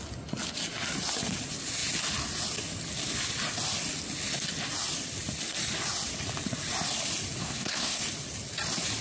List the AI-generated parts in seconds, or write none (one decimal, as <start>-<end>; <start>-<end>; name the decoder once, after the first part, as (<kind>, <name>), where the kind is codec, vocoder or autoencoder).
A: 7.4-8.0 (codec, SNAC)